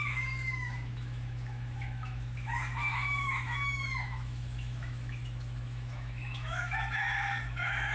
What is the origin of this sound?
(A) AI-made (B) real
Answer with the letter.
A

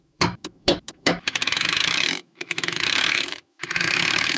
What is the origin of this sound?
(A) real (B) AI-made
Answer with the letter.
B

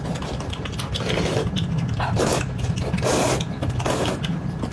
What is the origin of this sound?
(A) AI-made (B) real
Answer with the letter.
B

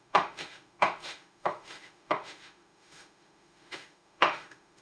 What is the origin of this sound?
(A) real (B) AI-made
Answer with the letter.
B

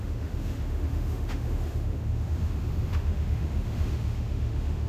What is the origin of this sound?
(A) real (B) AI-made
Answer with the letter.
B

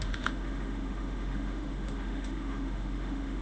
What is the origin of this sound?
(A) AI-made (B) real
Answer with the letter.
A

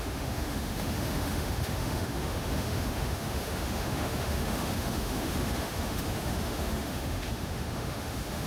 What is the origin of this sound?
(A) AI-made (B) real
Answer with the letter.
A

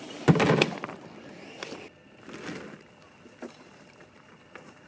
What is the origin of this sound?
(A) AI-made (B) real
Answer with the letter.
B